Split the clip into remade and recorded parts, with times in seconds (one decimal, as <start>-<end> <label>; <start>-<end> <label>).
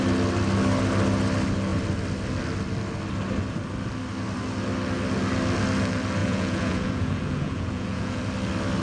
0.0-6.2 recorded; 6.2-8.2 remade; 8.2-8.8 recorded